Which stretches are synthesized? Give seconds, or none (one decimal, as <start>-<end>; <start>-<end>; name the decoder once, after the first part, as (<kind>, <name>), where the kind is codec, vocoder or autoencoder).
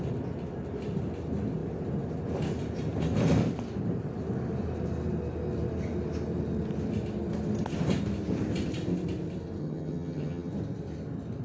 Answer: 9.6-10.5 (vocoder, HiFi-GAN)